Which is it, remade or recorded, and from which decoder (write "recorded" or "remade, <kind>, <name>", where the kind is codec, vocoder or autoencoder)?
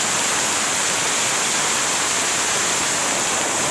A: recorded